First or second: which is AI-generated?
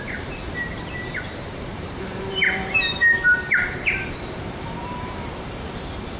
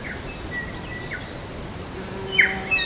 first